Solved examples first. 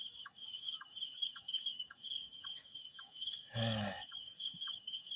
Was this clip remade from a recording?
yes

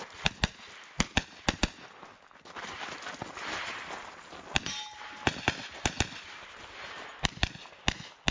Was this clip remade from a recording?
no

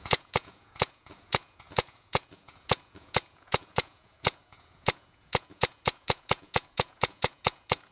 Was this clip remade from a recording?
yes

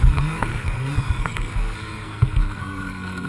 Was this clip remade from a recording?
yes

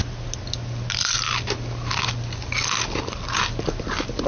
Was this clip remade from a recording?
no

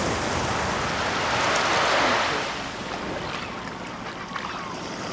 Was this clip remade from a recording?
no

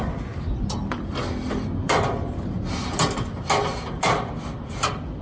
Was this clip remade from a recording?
no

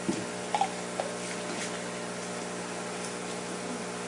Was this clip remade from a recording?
no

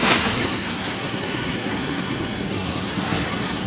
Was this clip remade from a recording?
yes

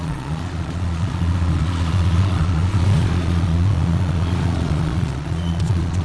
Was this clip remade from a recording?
yes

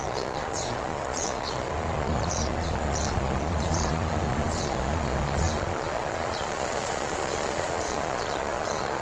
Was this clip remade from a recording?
yes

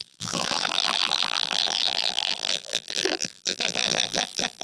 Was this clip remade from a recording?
yes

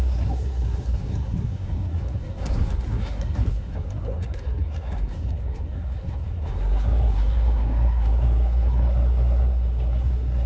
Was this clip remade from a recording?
yes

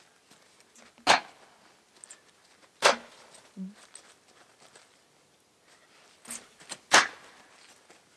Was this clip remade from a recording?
no